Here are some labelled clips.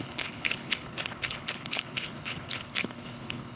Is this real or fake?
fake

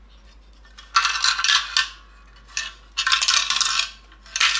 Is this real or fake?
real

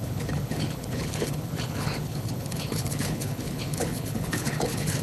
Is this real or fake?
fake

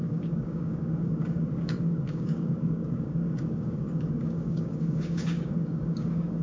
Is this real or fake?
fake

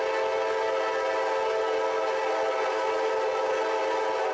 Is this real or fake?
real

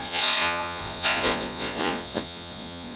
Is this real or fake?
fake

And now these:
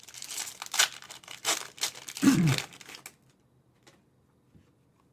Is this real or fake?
real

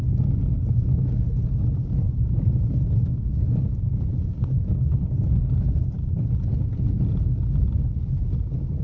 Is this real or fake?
real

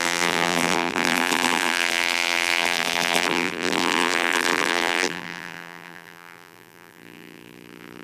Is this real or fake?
fake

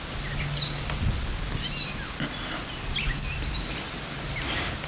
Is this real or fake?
real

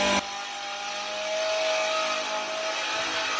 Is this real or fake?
real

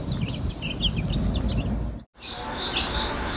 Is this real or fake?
real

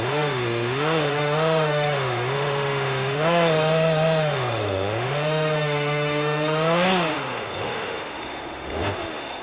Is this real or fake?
fake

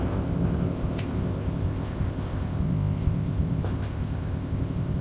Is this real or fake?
fake